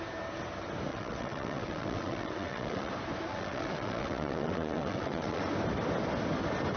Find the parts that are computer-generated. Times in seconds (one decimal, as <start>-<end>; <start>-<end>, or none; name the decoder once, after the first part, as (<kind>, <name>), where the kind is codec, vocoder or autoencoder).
0.9-2.9 (vocoder, WaveNeXt); 3.3-5.4